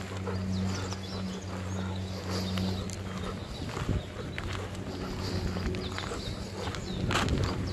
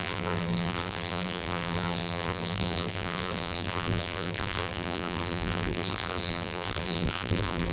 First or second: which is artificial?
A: second